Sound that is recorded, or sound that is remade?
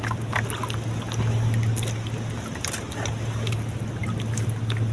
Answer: recorded